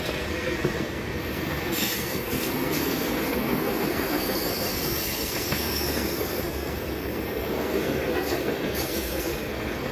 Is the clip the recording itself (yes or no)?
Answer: no